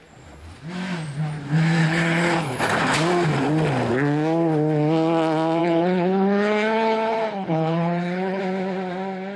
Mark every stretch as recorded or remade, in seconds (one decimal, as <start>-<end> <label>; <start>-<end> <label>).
0.0-1.8 recorded; 1.8-2.6 remade; 2.6-5.6 recorded; 5.6-8.4 remade; 8.4-9.4 recorded